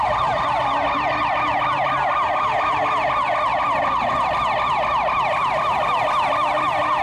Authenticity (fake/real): real